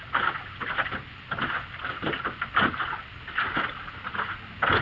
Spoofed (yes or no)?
no